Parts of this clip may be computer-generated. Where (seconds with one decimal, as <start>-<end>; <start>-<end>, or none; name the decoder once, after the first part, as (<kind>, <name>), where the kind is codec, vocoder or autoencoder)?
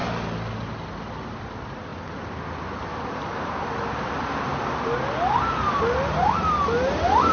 none